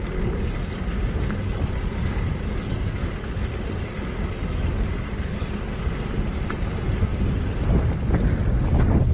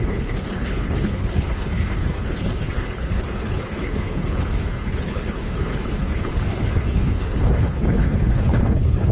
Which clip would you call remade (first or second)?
second